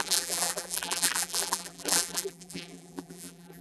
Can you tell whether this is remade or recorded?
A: remade